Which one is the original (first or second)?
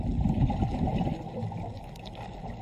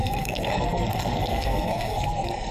first